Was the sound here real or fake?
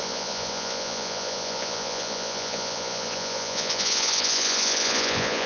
fake